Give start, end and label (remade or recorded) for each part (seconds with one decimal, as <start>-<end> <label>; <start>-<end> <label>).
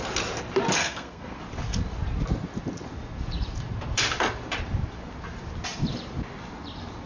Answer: 0.0-0.8 recorded; 0.8-1.4 remade; 1.4-7.1 recorded